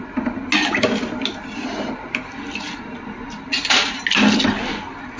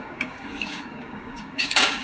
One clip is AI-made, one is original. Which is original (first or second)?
first